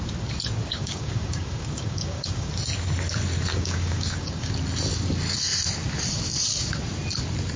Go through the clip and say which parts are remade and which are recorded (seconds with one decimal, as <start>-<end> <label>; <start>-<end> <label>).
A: 0.0-0.7 recorded; 0.7-2.5 remade; 2.5-3.5 recorded; 3.5-4.5 remade; 4.5-7.6 recorded